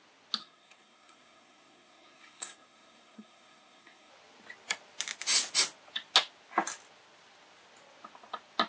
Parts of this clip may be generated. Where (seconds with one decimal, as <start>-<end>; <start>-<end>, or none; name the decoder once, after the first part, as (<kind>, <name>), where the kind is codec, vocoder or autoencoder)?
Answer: 0.4-4.1 (codec, SNAC)